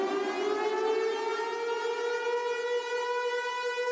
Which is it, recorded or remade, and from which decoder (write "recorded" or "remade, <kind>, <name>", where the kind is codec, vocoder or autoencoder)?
recorded